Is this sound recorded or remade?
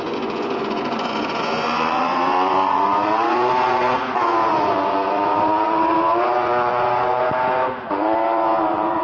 remade